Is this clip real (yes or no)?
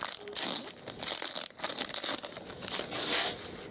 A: yes